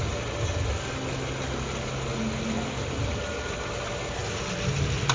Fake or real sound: real